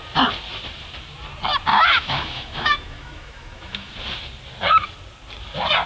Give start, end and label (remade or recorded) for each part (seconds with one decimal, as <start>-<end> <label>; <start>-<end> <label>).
0.0-1.7 recorded; 1.7-3.9 remade; 3.9-5.9 recorded